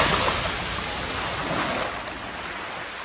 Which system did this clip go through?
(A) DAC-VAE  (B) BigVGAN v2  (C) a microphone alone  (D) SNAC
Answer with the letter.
C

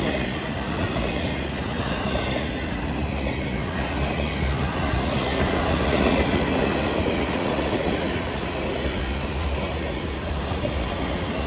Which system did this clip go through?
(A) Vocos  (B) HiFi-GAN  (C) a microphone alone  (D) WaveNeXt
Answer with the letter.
A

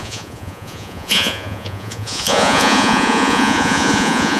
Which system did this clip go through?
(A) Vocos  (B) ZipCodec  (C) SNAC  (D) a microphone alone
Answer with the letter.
A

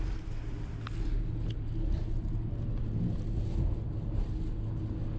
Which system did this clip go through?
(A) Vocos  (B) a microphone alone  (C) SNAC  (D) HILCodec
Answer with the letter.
B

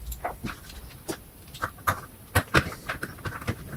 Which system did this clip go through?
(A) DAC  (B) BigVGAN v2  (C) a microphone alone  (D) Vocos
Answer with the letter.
C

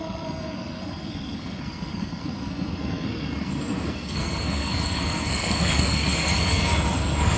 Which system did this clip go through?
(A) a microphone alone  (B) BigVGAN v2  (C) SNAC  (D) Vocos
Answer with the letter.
C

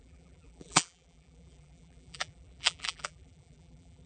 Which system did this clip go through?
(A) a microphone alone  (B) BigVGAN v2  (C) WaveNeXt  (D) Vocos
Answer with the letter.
B